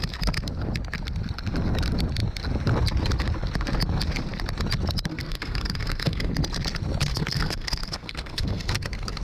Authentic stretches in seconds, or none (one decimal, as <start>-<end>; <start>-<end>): 0.0-5.1; 6.3-7.1